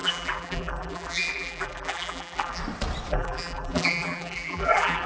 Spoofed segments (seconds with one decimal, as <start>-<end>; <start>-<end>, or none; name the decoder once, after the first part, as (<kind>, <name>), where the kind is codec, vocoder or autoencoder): 0.0-2.6 (vocoder, BigVGAN v2); 3.1-5.1